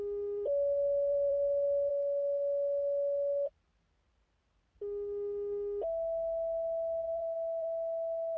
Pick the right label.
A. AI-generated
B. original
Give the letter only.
B